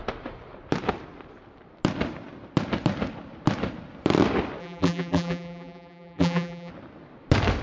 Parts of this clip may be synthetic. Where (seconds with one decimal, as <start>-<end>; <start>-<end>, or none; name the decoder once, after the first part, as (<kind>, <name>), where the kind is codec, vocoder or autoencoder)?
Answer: 4.6-6.7 (vocoder, BigVGAN v2)

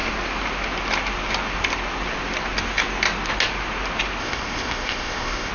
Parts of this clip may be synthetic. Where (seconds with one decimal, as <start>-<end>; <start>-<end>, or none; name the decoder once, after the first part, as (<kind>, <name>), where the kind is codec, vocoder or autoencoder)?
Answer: 4.2-5.5 (codec, ZipCodec)

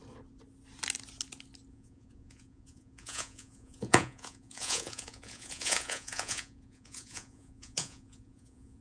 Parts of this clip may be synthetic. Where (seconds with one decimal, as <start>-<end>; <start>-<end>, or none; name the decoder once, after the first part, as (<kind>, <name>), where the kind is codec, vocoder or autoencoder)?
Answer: 1.7-8.8 (vocoder, Vocos)

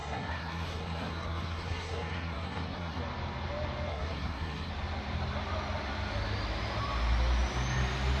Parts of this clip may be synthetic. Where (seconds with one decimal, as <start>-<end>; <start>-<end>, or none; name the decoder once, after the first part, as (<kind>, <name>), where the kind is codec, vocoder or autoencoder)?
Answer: 0.0-3.0 (codec, SNAC); 3.9-4.7

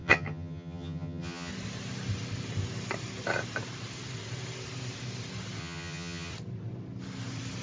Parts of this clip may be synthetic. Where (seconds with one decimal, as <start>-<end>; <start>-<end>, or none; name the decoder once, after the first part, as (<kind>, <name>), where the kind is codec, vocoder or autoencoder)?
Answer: 0.0-1.5 (vocoder, HiFi-GAN); 5.6-6.3

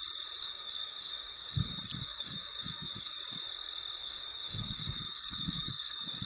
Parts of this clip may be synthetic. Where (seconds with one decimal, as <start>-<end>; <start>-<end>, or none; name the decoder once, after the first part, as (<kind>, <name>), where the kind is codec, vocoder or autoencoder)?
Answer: 0.4-3.2 (codec, DAC); 4.0-6.3

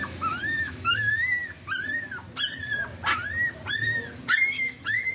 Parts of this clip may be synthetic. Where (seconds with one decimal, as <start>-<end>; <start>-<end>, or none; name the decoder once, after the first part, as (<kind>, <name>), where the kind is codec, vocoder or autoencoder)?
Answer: 0.0-1.4 (autoencoder, DAC-VAE); 4.5-5.1

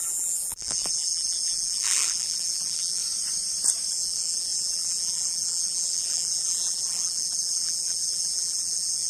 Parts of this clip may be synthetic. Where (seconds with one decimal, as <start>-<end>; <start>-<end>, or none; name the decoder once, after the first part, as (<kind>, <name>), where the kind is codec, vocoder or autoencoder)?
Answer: 0.0-3.0 (vocoder, BigVGAN v2); 3.9-9.1